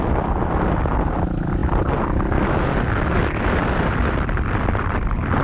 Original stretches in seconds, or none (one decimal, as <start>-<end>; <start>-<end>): 0.0-5.4